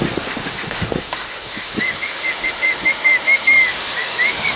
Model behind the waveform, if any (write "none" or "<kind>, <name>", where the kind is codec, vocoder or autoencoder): autoencoder, DAC-VAE